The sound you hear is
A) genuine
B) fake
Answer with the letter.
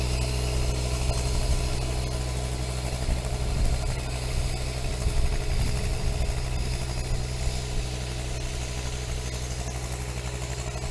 A